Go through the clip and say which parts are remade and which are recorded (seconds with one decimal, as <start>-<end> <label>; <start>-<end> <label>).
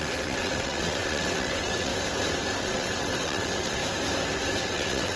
0.0-1.9 remade; 1.9-2.6 recorded; 2.6-3.8 remade; 3.8-4.6 recorded; 4.6-5.2 remade